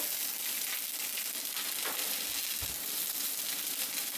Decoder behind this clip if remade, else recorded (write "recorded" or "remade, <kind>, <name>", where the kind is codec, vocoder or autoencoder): recorded